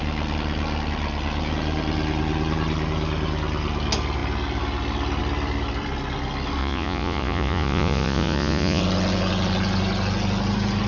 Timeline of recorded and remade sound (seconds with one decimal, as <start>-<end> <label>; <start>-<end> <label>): 0.0-6.6 recorded; 6.6-8.8 remade; 8.8-10.9 recorded